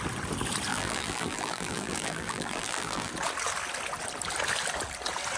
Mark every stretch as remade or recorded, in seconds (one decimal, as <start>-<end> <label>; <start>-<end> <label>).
0.0-0.7 recorded; 0.7-3.1 remade; 3.1-5.4 recorded